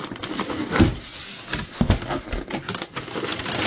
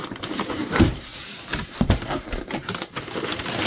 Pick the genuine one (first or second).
first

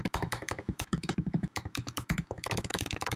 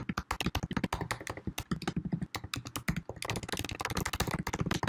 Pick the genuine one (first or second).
second